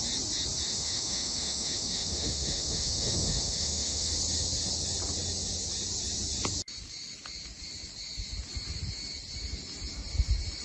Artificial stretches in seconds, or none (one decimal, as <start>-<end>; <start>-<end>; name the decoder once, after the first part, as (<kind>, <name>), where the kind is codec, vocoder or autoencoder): 0.7-4.1 (autoencoder, DAC-VAE)